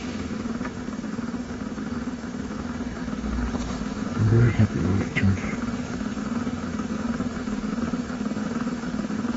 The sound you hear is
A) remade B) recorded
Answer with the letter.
A